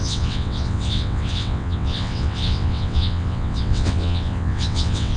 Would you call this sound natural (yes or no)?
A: no